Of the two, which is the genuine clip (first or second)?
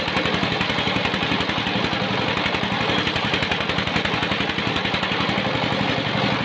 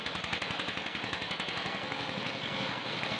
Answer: first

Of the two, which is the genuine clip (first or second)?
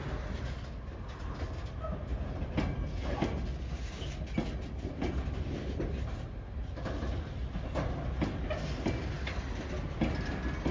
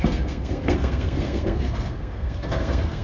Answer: first